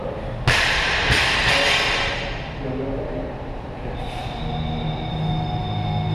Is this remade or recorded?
recorded